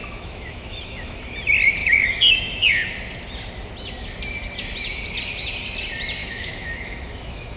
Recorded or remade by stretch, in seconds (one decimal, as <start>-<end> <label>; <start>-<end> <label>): 0.0-1.2 remade; 1.2-1.8 recorded; 1.8-2.7 remade; 2.7-6.2 recorded; 6.2-7.6 remade

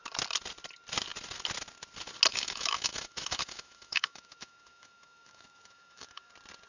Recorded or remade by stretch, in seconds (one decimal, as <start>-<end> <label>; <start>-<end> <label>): 0.0-2.3 recorded; 2.3-6.3 remade; 6.3-6.7 recorded